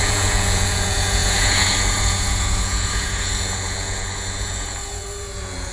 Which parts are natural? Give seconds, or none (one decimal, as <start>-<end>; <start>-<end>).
none

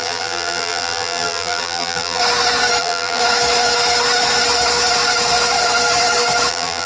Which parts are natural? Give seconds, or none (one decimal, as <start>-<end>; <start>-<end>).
2.2-2.8; 3.2-6.5

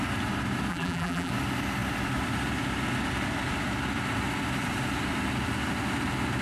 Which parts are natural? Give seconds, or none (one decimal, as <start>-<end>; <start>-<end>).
0.0-0.7; 1.3-6.4

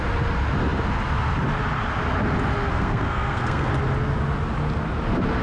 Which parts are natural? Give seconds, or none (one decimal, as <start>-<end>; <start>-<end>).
0.0-2.7; 3.7-5.4

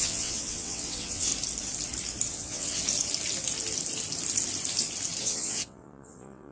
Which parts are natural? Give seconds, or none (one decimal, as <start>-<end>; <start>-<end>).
1.3-2.3; 2.8-5.2

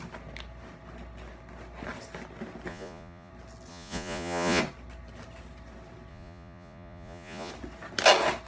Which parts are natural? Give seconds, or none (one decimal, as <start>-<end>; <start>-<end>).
0.0-2.7; 3.3-3.7; 4.6-6.1; 7.5-8.5

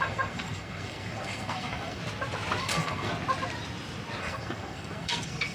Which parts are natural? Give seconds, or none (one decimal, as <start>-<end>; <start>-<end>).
2.0-2.6; 3.1-4.2

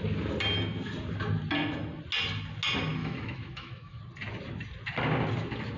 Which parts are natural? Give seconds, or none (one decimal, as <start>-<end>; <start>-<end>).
0.0-3.0; 4.0-5.8